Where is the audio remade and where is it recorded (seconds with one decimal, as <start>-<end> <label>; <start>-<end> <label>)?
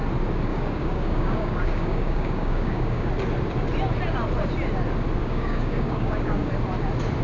0.0-0.5 recorded; 0.5-3.1 remade; 3.1-5.2 recorded; 5.2-6.5 remade; 6.5-7.2 recorded